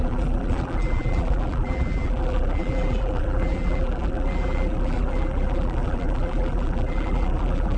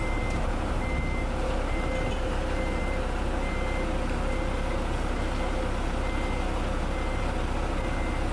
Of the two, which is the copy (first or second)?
first